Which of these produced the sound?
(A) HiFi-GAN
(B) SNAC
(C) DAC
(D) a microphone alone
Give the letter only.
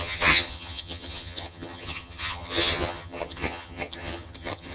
A